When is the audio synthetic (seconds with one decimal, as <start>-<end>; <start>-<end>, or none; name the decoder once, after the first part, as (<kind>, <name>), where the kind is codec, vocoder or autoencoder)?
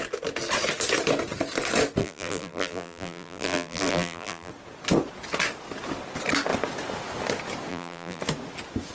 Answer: 2.0-4.5 (vocoder, BigVGAN v2); 7.7-8.2